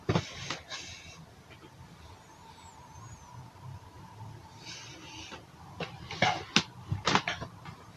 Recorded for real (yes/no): yes